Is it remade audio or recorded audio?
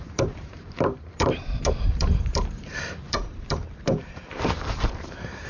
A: remade